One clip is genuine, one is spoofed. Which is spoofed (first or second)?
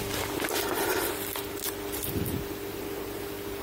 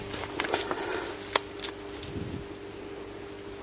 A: first